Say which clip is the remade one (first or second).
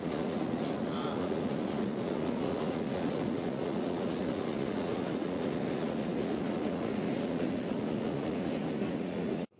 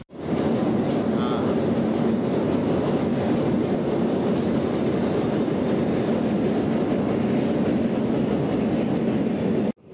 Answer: first